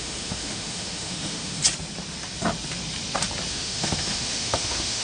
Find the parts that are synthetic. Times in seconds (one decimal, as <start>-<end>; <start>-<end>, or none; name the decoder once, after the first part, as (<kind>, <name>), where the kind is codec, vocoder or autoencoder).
0.0-1.6 (autoencoder, DAC-VAE); 3.5-5.0